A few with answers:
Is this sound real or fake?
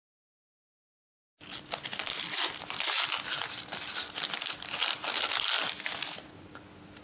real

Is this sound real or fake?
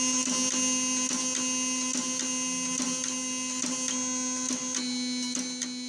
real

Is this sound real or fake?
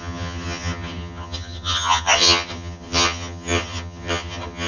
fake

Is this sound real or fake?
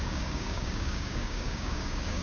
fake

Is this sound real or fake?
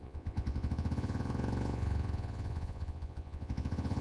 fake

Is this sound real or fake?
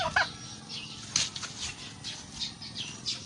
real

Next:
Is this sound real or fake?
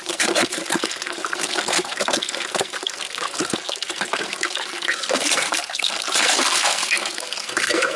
fake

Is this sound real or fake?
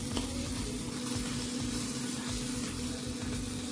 real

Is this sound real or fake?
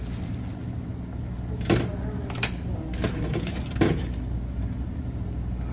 real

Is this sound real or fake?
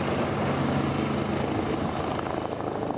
real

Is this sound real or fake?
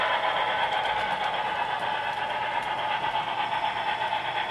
real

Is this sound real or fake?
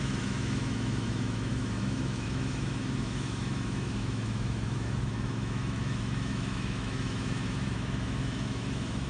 fake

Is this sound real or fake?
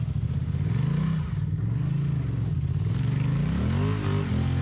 real